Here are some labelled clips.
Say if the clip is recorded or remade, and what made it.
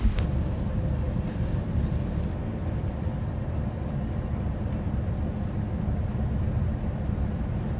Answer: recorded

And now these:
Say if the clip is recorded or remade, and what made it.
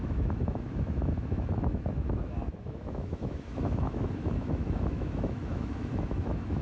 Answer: remade, autoencoder, DAC-VAE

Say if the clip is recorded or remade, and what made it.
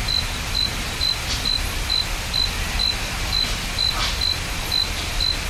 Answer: recorded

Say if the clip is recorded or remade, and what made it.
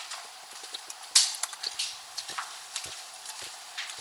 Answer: recorded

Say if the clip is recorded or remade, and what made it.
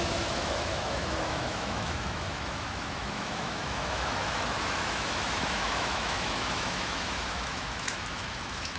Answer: remade, autoencoder, DAC-VAE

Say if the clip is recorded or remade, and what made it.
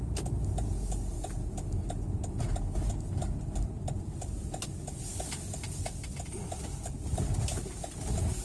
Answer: recorded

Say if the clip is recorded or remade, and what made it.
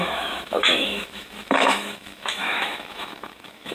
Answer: remade, autoencoder, DAC-VAE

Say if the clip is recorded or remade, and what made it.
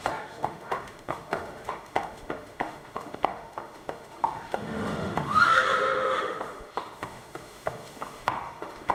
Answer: remade, autoencoder, DAC-VAE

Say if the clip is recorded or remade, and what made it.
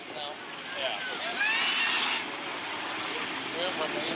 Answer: recorded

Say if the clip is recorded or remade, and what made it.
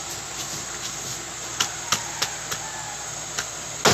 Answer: recorded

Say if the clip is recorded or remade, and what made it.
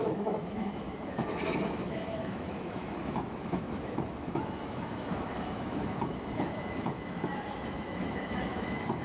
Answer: remade, autoencoder, DAC-VAE